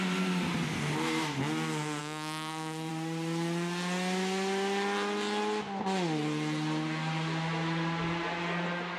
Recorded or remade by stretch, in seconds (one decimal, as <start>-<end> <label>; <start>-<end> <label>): 0.0-2.0 recorded; 2.0-2.9 remade; 2.9-9.0 recorded